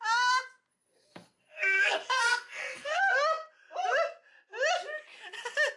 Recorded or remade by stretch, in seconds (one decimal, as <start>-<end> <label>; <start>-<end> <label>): 0.0-0.7 recorded; 0.7-3.0 remade; 3.0-5.8 recorded